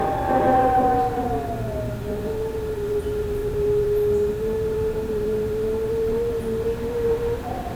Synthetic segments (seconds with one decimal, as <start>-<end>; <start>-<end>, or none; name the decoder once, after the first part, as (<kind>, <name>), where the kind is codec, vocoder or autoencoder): 3.4-6.3 (vocoder, BigVGAN v2)